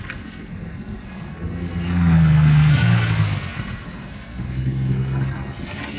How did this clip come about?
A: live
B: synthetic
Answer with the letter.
B